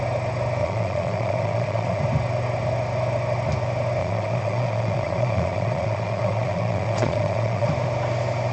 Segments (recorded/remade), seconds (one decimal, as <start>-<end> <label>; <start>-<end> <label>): 0.0-0.6 recorded; 0.6-2.0 remade; 2.0-4.0 recorded; 4.0-7.7 remade; 7.7-8.5 recorded